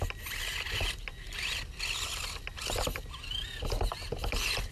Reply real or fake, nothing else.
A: real